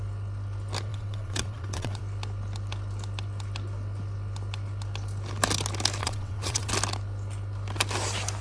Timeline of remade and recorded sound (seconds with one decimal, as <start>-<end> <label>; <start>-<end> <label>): 0.0-0.9 recorded; 0.9-2.0 remade; 2.0-6.0 recorded; 6.0-6.7 remade; 6.7-8.4 recorded

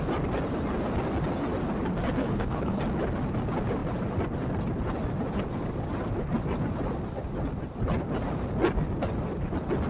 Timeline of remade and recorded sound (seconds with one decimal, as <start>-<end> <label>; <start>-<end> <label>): 0.0-2.2 recorded; 2.2-2.8 remade; 2.8-9.9 recorded

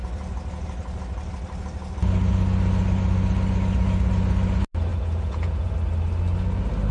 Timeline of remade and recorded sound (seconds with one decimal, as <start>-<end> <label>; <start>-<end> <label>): 0.0-4.9 recorded; 4.9-5.7 remade; 5.7-6.9 recorded

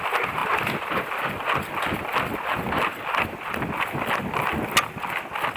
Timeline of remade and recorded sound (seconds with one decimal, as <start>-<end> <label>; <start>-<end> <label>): 0.0-5.6 recorded

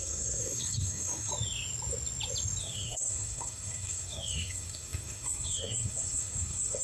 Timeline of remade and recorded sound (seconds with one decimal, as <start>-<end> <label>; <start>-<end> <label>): 0.0-1.3 remade; 1.3-2.6 recorded; 2.6-6.8 remade

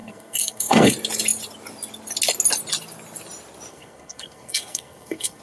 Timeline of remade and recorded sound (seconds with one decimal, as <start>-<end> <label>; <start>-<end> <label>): 0.0-0.9 remade; 0.9-3.7 recorded; 3.7-5.4 remade

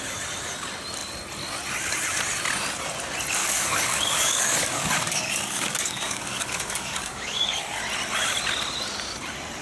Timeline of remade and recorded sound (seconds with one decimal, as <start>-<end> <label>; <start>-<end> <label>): 0.0-3.4 recorded; 3.4-7.8 remade; 7.8-9.6 recorded